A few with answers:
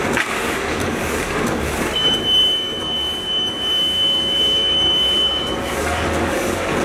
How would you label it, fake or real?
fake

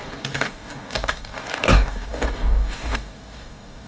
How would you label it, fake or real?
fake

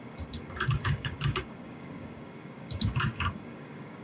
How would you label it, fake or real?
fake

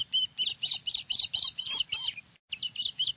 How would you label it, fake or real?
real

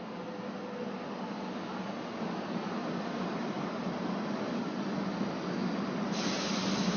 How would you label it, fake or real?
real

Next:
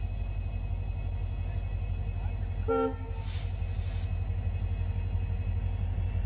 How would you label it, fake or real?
real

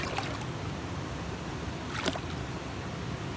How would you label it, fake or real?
real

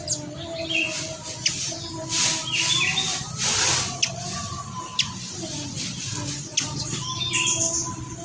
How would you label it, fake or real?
real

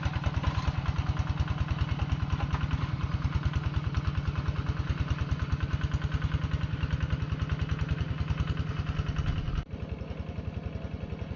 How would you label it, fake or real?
real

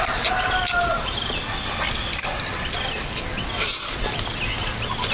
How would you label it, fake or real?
real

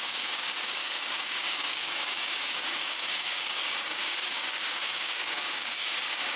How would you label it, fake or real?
fake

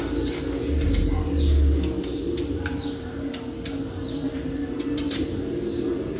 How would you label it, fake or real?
real